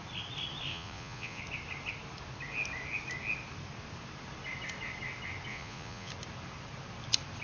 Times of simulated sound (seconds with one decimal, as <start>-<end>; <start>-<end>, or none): 0.7-1.4; 5.5-6.1